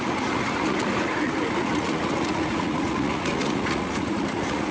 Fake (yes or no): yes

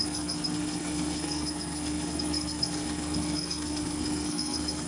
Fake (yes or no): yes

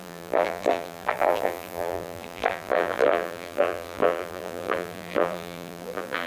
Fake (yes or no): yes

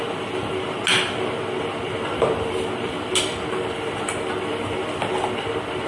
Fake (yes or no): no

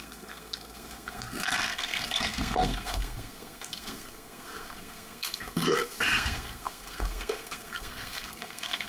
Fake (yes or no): yes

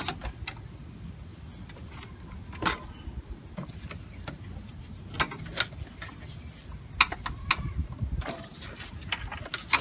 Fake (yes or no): no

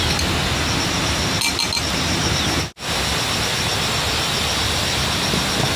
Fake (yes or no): no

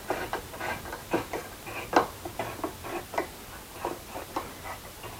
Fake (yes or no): no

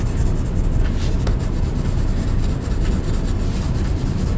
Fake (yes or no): no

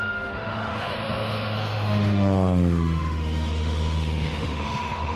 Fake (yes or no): yes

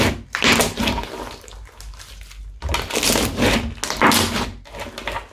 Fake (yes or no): no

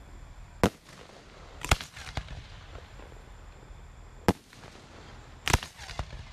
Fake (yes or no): no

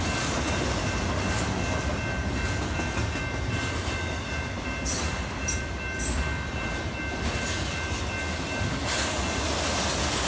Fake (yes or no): no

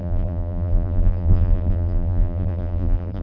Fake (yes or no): yes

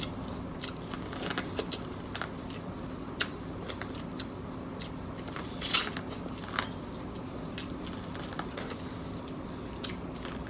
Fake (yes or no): no